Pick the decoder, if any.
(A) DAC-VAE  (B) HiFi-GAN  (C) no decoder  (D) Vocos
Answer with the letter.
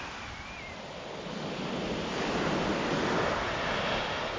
C